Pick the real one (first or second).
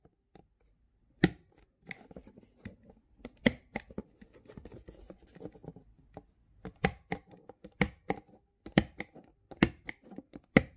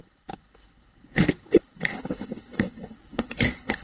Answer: first